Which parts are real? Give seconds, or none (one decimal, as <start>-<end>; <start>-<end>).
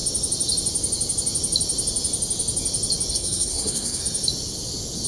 0.0-3.1; 4.0-5.1